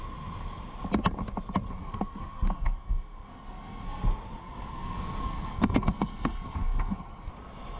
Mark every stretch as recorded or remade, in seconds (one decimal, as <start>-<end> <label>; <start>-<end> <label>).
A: 0.0-1.8 recorded; 1.8-4.0 remade; 4.0-4.4 recorded; 4.4-7.3 remade; 7.3-7.8 recorded